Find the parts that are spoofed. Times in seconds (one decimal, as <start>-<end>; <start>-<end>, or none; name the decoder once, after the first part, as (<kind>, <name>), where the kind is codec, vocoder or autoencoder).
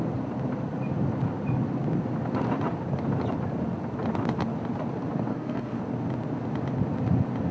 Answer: 5.3-5.8 (codec, SNAC)